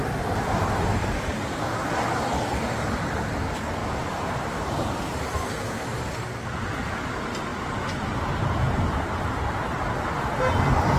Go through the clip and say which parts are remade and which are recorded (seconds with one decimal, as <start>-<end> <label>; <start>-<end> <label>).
0.0-3.8 recorded; 3.8-5.5 remade; 5.5-7.5 recorded; 7.5-9.8 remade; 9.8-11.0 recorded